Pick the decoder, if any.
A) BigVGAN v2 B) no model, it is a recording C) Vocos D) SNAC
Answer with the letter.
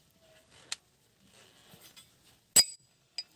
B